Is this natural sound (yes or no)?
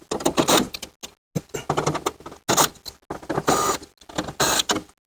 yes